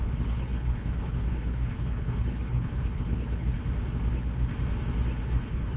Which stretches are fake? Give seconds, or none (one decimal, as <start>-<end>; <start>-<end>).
0.0-3.6; 5.2-5.8